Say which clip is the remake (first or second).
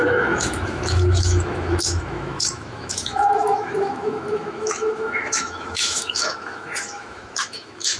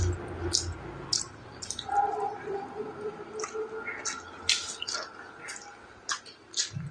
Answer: first